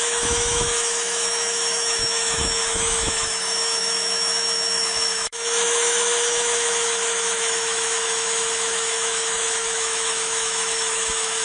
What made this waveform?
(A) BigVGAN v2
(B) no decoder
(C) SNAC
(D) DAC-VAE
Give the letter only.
D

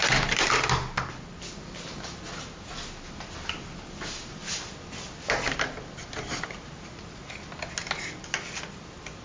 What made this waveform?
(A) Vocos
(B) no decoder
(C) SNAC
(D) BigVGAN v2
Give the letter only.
B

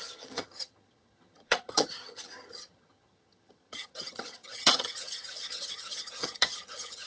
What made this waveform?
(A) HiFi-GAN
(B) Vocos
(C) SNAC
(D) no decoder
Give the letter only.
A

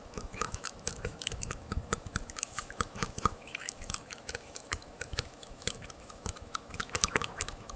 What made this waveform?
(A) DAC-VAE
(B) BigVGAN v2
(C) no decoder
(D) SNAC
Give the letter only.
A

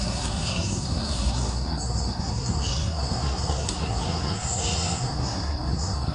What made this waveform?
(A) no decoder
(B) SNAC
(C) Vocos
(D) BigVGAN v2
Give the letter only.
B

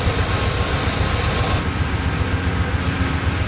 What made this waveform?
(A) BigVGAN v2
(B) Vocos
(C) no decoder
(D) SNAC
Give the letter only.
C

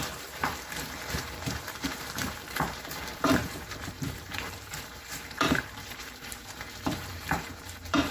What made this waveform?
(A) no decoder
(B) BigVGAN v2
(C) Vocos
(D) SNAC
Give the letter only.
B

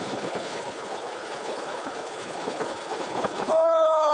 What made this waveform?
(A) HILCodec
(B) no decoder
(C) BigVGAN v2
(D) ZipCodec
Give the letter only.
A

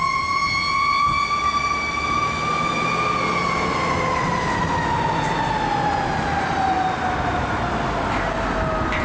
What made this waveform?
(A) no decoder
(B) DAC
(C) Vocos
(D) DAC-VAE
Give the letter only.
A